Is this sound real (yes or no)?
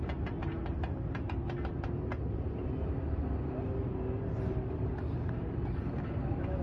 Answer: yes